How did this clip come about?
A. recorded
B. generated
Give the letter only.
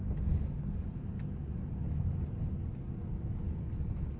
A